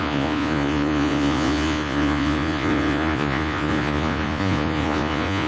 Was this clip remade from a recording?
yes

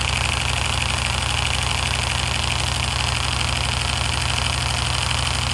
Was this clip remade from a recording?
no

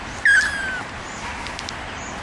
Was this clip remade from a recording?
no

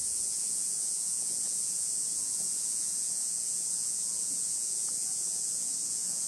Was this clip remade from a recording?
yes